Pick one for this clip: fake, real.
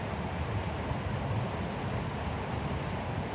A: real